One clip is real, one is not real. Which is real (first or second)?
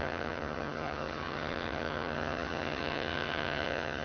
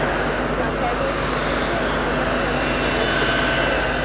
second